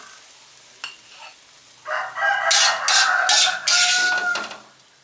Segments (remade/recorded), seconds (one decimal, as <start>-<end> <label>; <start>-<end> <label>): 0.0-5.0 recorded